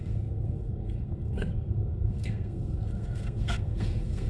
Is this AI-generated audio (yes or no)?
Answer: yes